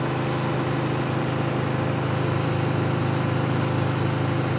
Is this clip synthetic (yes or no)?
no